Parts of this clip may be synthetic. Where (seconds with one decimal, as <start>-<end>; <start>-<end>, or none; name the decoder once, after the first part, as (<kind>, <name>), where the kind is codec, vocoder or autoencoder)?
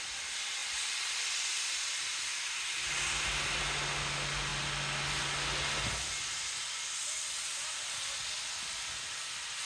none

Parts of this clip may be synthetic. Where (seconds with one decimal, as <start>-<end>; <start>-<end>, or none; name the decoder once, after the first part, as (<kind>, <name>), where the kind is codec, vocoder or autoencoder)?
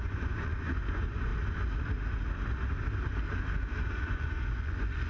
0.0-1.3 (vocoder, Vocos); 3.9-5.1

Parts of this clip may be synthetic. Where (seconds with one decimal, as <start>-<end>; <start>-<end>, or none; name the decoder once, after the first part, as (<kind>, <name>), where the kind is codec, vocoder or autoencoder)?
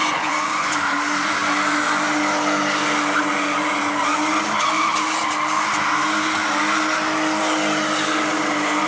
0.0-0.7 (vocoder, Vocos)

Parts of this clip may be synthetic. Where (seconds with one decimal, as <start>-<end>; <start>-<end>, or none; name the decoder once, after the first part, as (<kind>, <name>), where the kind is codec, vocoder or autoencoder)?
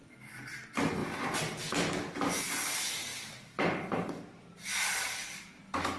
none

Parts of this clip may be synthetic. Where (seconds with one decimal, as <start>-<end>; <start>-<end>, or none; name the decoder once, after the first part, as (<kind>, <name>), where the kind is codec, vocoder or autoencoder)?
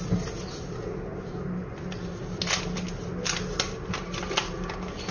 none